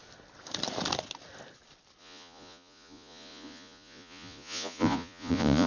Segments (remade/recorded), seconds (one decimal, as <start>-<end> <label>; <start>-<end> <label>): 0.0-2.0 recorded; 2.0-5.7 remade